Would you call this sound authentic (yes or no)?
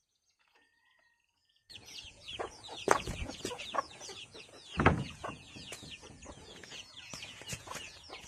no